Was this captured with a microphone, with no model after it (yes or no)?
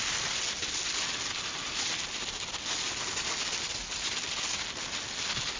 yes